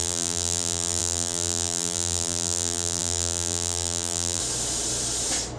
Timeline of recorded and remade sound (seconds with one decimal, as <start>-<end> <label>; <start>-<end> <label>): 0.0-4.4 remade; 4.4-5.6 recorded